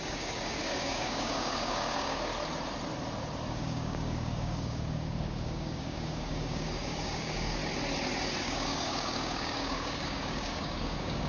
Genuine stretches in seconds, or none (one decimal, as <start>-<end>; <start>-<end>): 2.3-3.5; 7.6-8.4